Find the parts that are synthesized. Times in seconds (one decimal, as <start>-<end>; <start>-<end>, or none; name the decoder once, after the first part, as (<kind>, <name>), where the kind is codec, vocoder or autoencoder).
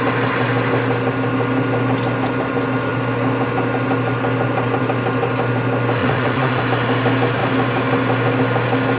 6.0-6.6 (vocoder, Vocos)